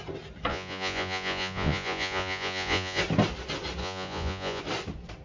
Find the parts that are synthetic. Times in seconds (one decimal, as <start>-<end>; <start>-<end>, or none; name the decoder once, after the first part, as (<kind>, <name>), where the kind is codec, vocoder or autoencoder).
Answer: 0.5-3.0 (vocoder, Vocos); 3.8-4.6